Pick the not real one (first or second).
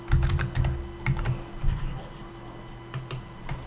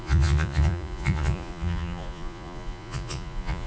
second